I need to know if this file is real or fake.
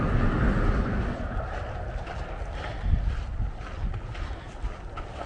real